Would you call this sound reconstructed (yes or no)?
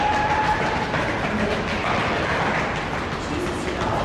no